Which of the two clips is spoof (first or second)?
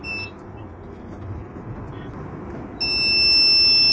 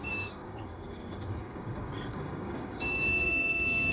second